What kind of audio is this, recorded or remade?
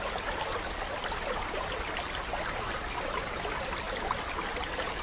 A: recorded